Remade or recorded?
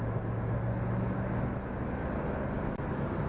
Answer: recorded